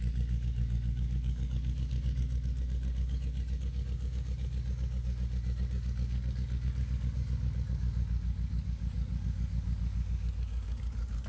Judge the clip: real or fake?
fake